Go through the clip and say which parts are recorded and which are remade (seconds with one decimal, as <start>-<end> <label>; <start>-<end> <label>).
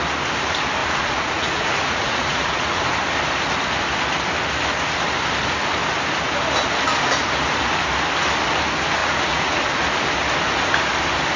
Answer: 0.0-0.8 recorded; 0.8-2.8 remade; 2.8-9.0 recorded; 9.0-9.6 remade; 9.6-11.4 recorded